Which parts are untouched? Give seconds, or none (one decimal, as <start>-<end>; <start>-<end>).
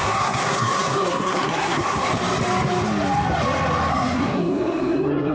2.1-3.9